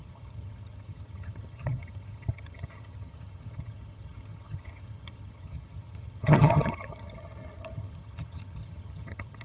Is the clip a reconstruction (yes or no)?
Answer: yes